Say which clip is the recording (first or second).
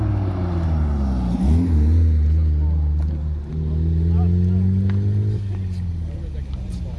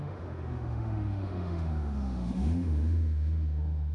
first